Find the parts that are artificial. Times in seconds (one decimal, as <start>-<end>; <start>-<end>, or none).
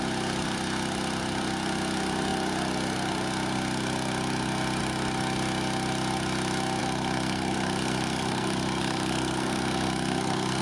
6.8-10.6